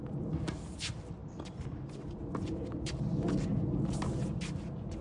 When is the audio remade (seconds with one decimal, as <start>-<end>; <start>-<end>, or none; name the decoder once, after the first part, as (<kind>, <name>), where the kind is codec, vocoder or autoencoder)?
none